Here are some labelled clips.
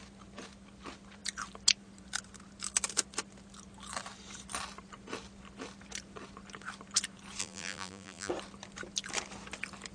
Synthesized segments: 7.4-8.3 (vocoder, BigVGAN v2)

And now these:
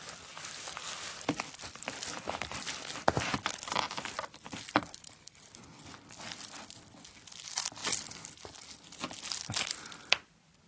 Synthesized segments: none